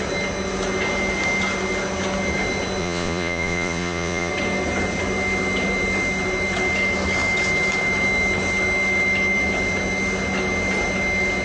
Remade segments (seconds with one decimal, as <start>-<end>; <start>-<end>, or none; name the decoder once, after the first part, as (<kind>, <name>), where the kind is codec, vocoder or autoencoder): 2.8-4.3 (vocoder, Vocos)